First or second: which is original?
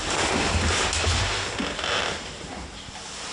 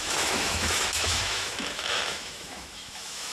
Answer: first